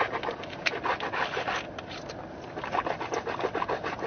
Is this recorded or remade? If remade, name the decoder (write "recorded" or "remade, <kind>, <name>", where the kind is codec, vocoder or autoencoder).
recorded